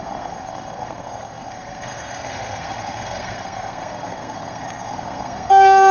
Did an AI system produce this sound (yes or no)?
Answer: yes